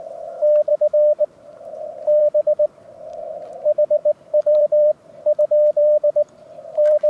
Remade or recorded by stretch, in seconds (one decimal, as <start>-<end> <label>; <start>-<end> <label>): 0.0-2.2 recorded; 2.2-2.7 remade; 2.7-4.0 recorded; 4.0-5.2 remade; 5.2-5.8 recorded; 5.8-7.1 remade